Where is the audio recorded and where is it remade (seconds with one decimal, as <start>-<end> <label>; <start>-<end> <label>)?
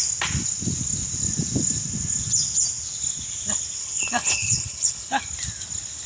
0.0-3.8 recorded; 3.8-5.2 remade; 5.2-6.1 recorded